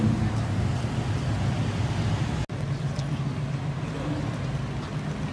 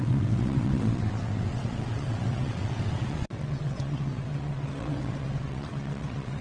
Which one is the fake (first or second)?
second